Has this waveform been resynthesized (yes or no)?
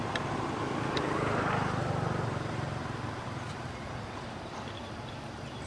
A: no